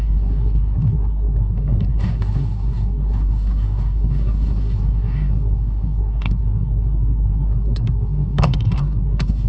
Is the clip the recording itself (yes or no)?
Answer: no